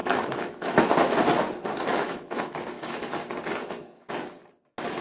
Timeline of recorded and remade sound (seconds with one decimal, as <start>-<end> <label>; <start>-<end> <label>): 0.0-0.9 remade; 0.9-1.9 recorded; 1.9-3.0 remade; 3.0-3.6 recorded; 3.6-4.1 remade; 4.1-5.0 recorded